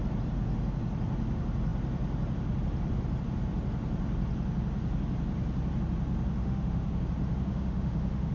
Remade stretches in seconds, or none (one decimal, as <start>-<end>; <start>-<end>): 6.4-7.0; 7.5-8.3